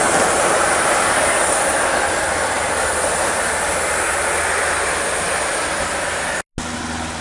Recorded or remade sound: recorded